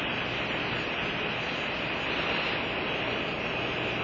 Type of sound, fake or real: real